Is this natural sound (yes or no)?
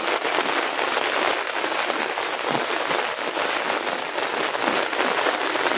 yes